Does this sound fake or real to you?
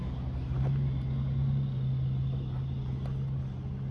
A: real